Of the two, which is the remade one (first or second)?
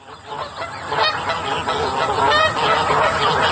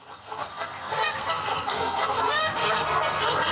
second